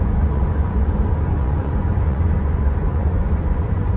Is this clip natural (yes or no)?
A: no